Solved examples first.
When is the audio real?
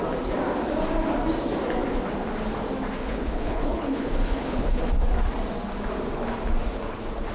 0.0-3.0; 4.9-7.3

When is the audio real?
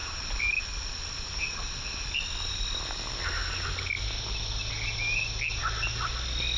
0.0-6.6